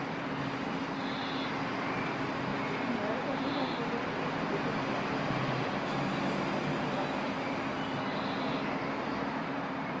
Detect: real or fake real